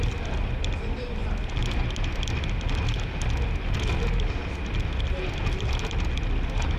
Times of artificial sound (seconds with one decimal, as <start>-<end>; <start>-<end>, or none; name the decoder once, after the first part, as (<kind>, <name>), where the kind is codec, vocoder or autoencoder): none